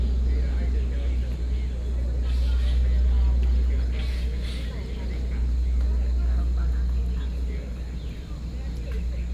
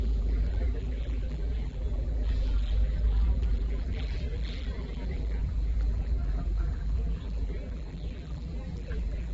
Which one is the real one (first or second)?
first